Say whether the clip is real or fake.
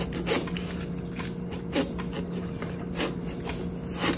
real